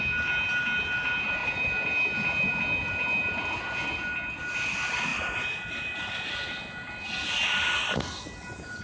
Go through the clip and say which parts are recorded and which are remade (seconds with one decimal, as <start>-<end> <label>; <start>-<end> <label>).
0.0-8.8 recorded